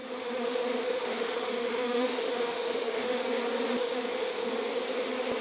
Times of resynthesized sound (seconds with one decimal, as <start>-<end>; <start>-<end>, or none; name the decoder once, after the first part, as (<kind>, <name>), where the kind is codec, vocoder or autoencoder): 0.0-3.2 (autoencoder, DAC-VAE); 3.8-4.5